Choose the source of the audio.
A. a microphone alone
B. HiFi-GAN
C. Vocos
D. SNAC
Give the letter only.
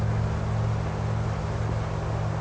A